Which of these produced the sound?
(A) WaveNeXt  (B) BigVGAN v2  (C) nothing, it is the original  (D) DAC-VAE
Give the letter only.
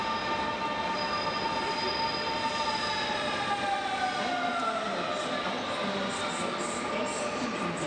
C